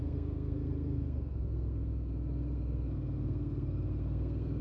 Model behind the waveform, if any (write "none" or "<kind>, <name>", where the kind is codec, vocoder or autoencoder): codec, SNAC